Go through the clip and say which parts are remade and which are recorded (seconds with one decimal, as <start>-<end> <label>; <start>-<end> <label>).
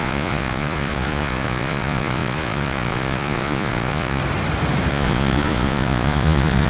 0.0-4.2 remade; 4.2-4.9 recorded; 4.9-6.7 remade